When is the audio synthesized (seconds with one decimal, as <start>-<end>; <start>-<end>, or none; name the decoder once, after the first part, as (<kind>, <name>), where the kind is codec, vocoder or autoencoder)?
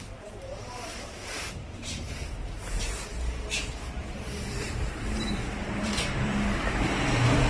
0.0-7.5 (vocoder, BigVGAN v2)